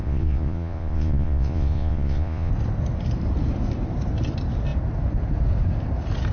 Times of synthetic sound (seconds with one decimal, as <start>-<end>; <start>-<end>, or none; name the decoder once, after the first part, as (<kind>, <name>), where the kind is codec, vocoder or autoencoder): 0.0-2.5 (vocoder, Vocos)